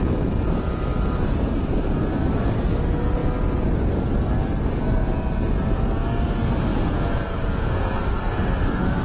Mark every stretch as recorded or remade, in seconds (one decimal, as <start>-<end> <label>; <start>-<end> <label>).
0.0-6.7 recorded; 6.7-7.9 remade; 7.9-9.0 recorded